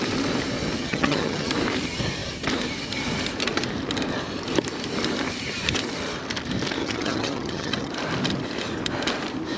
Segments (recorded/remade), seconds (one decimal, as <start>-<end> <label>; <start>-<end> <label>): 0.0-0.8 recorded; 0.8-1.5 remade; 1.5-6.8 recorded; 6.8-7.9 remade; 7.9-9.6 recorded